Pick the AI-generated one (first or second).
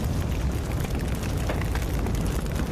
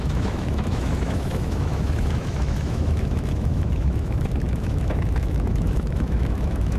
second